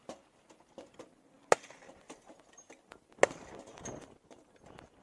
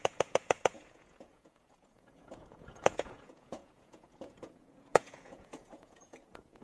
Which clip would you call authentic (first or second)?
first